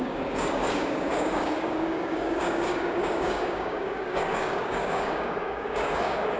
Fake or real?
fake